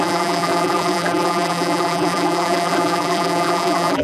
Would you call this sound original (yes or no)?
no